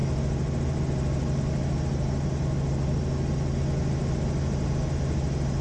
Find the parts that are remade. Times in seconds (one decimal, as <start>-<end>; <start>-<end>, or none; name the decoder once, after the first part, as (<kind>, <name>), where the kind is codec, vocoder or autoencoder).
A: none